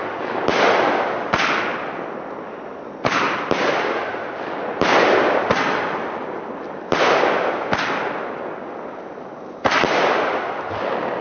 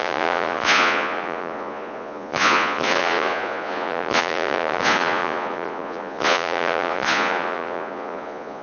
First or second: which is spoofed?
second